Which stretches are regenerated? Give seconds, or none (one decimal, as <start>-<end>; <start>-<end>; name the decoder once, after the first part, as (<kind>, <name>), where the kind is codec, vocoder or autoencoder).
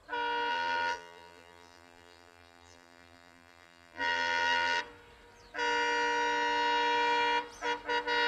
0.5-4.8 (vocoder, BigVGAN v2)